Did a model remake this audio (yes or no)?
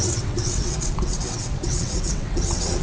yes